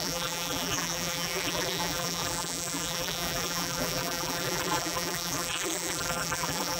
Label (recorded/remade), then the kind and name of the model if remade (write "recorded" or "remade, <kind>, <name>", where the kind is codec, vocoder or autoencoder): remade, vocoder, BigVGAN v2